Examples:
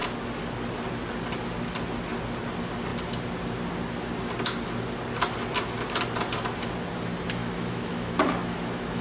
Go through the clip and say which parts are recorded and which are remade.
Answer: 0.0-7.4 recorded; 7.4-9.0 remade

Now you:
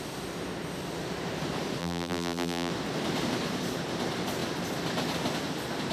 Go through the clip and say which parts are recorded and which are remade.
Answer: 0.0-1.8 recorded; 1.8-2.7 remade; 2.7-5.9 recorded

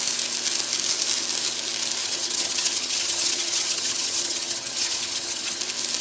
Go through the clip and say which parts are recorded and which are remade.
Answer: 0.0-2.0 recorded; 2.0-5.6 remade; 5.6-6.0 recorded

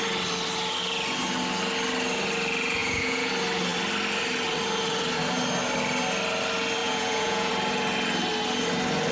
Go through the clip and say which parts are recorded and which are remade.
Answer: 0.0-2.8 recorded; 2.8-3.3 remade; 3.3-6.8 recorded; 6.8-7.5 remade; 7.5-9.1 recorded

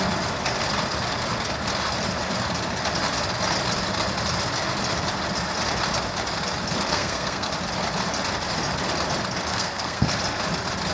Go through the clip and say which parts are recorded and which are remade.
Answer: 0.0-6.9 recorded; 6.9-7.5 remade; 7.5-9.5 recorded; 9.5-10.1 remade; 10.1-10.9 recorded

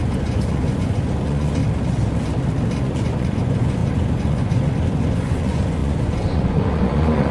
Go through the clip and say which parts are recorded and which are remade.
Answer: 0.0-1.6 remade; 1.6-2.8 recorded; 2.8-7.3 remade

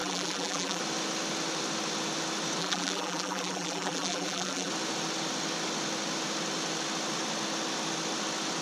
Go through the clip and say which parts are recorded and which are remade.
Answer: 0.0-0.8 remade; 0.8-2.6 recorded; 2.6-4.7 remade; 4.7-8.6 recorded